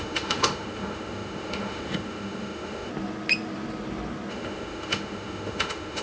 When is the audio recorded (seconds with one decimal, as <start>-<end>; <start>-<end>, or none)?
2.9-4.3